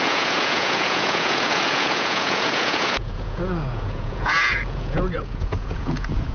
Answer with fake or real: fake